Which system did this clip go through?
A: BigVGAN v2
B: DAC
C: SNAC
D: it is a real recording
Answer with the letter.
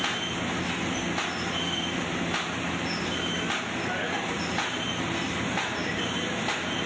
D